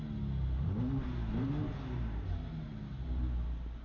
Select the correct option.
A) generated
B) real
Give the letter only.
B